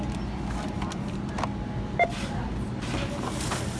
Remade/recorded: recorded